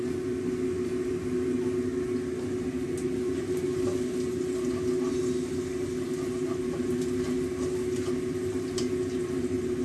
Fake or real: real